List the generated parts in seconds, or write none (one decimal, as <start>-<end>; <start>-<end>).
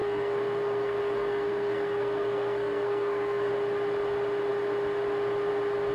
0.0-3.5